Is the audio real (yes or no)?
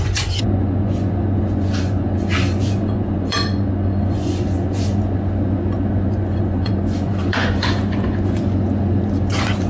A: no